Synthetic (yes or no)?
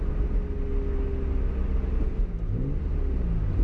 no